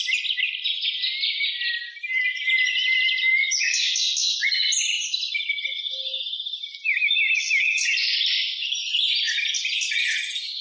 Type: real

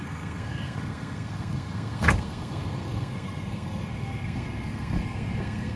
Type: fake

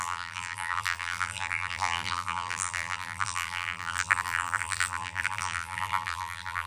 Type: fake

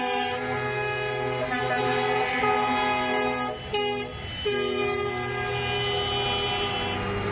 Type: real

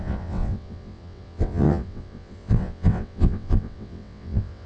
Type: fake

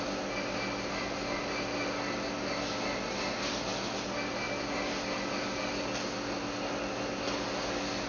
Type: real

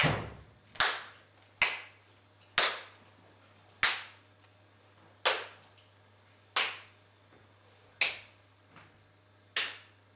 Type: real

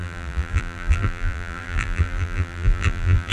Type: fake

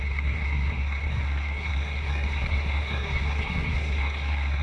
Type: fake